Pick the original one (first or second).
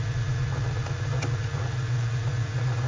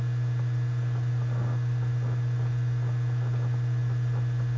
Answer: second